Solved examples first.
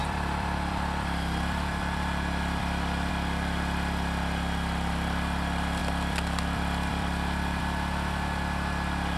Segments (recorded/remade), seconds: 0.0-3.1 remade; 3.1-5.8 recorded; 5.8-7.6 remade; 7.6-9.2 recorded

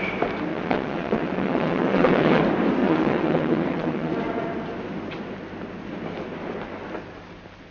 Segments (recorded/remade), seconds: 0.0-0.5 recorded; 0.5-2.4 remade; 2.4-2.8 recorded; 2.8-4.1 remade; 4.1-7.7 recorded

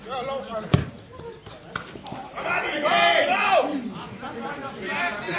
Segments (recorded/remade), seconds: 0.0-3.1 recorded; 3.1-5.4 remade

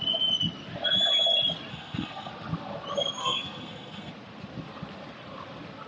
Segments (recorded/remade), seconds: 0.0-1.7 recorded; 1.7-2.3 remade; 2.3-3.2 recorded; 3.2-4.1 remade; 4.1-5.9 recorded

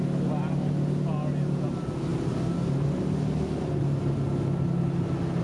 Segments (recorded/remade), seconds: 0.0-5.4 recorded

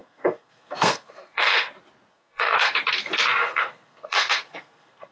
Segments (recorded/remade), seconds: 0.0-1.7 remade; 1.7-2.1 recorded; 2.1-2.7 remade; 2.7-3.4 recorded; 3.4-5.1 remade

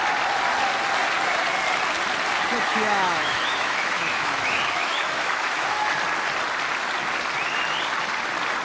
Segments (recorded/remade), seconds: 0.0-2.7 recorded; 2.7-5.9 remade; 5.9-8.6 recorded

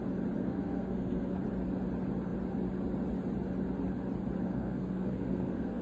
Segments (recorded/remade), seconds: 0.0-0.4 recorded; 0.4-1.4 remade; 1.4-4.5 recorded; 4.5-5.8 remade